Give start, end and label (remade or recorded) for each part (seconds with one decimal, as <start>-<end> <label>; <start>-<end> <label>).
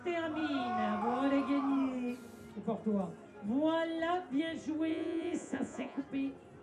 0.0-4.9 recorded; 4.9-6.0 remade; 6.0-6.6 recorded